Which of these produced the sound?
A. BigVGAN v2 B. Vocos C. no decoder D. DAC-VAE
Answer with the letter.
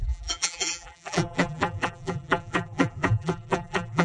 A